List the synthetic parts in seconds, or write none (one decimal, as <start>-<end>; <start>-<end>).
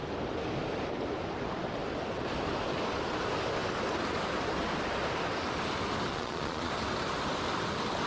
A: 6.1-6.7